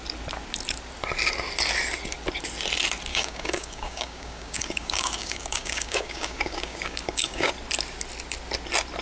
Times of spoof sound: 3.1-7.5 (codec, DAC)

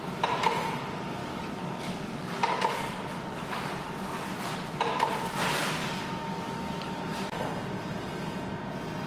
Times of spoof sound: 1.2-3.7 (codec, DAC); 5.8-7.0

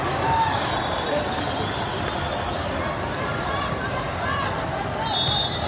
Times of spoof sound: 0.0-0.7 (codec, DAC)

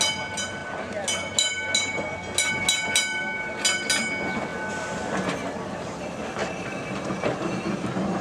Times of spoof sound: none

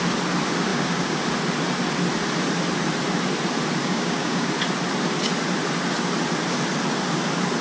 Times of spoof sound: 0.7-1.2 (codec, DAC); 3.8-4.5

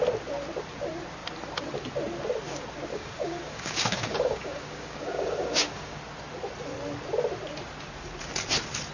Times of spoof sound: 2.9-6.0 (codec, DAC)